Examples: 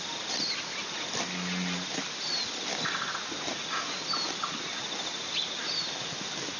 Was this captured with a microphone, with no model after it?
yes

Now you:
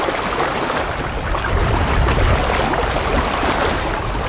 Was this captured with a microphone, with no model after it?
yes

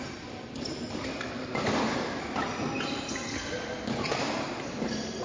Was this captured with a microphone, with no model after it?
yes